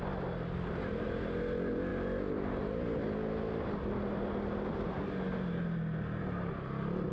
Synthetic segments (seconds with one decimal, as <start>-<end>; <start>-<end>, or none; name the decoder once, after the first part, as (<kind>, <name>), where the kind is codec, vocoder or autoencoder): none